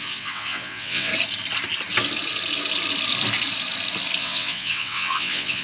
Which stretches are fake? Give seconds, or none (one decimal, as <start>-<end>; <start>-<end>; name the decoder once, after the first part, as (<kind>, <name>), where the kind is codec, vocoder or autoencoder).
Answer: 0.0-1.1 (vocoder, WaveNeXt); 4.2-5.6